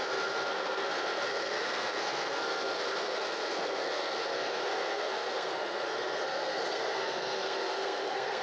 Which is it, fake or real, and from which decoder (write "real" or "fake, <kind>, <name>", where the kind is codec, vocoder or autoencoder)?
fake, codec, SNAC